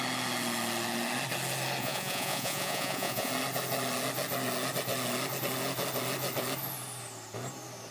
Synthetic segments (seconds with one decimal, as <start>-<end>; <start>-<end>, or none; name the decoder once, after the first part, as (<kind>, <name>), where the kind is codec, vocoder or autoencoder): 1.8-3.3 (vocoder, Vocos)